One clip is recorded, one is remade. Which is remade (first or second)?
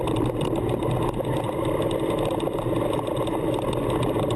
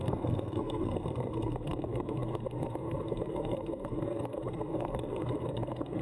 second